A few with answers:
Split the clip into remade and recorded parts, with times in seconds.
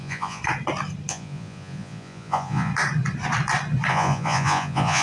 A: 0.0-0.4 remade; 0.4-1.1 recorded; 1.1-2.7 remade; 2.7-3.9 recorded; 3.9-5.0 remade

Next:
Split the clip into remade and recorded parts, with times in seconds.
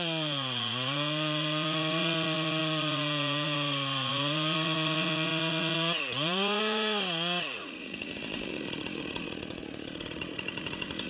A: 0.0-11.1 remade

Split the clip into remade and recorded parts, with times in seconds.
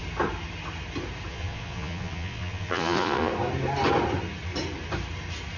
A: 0.0-1.3 recorded; 1.3-3.3 remade; 3.3-5.6 recorded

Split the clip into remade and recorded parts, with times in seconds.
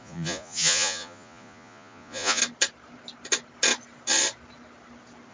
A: 0.0-2.4 remade; 2.4-5.3 recorded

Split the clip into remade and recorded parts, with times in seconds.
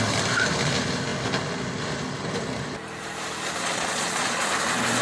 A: 0.0-3.6 recorded; 3.6-4.4 remade; 4.4-5.0 recorded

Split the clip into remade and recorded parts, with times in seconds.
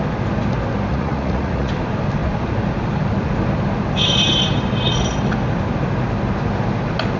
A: 0.0-0.9 recorded; 0.9-1.7 remade; 1.7-7.2 recorded